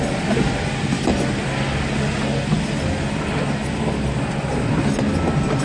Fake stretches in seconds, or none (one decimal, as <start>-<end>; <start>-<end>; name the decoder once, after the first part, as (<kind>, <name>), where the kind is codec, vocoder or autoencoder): none

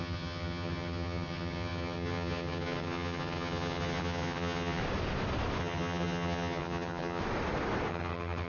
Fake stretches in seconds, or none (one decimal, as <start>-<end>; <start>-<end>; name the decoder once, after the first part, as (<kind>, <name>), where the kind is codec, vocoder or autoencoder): 0.0-4.8 (vocoder, HiFi-GAN); 5.6-7.2; 7.9-8.5

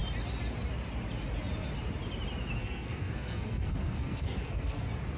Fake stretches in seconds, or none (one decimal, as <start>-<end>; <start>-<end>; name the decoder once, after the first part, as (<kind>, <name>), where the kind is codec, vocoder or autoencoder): 2.6-4.8 (codec, SNAC)

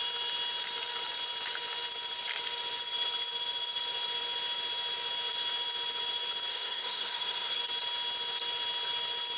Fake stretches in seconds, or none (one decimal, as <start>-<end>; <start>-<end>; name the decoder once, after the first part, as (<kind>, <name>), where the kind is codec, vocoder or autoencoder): 6.5-7.6 (codec, SNAC)

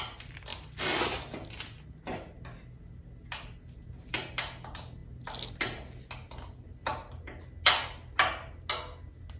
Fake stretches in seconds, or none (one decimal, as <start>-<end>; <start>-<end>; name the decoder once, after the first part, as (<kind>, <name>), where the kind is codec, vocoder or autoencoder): none